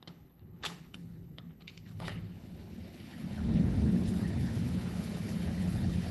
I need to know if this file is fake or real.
fake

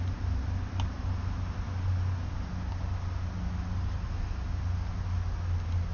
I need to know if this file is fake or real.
real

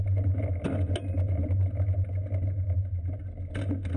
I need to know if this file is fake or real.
real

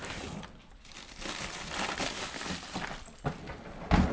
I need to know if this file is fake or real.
real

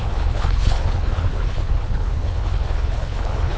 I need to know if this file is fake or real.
fake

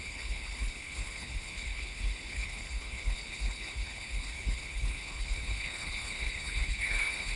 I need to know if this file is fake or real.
fake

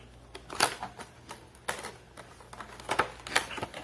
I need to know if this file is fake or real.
real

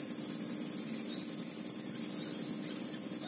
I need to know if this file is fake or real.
real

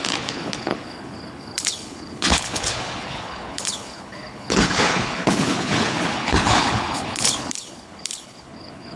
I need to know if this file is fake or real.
fake